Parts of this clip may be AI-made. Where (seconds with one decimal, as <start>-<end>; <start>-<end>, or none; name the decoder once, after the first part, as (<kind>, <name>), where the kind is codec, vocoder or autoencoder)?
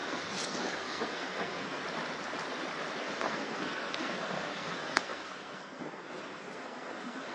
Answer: 0.0-1.8 (codec, SNAC); 3.0-7.3